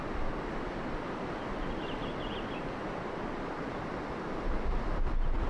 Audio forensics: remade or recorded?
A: remade